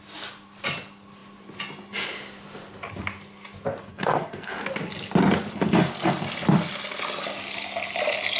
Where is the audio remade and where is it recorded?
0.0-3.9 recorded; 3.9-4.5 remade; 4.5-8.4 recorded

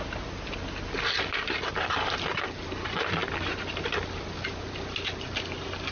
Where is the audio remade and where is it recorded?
0.0-5.9 recorded